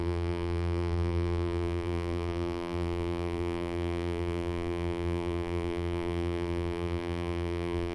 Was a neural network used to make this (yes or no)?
yes